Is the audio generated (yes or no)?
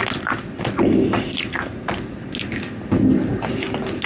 no